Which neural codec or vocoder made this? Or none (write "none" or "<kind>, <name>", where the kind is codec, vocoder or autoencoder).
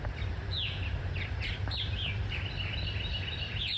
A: vocoder, BigVGAN v2